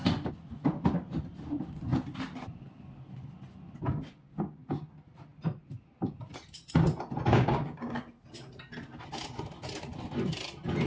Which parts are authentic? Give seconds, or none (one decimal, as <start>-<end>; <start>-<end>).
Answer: 0.0-7.3; 8.0-10.9